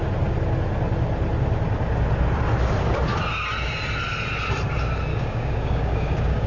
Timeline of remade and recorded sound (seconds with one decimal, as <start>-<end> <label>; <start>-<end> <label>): 0.0-5.1 recorded; 5.1-6.5 remade